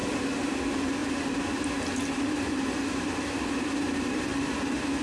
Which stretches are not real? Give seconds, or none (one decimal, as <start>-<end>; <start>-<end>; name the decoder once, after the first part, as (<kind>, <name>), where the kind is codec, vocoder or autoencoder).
0.0-0.6 (vocoder, BigVGAN v2); 1.0-4.0